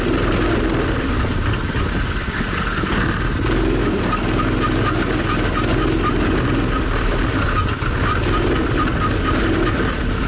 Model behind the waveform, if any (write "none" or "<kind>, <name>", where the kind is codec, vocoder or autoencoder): none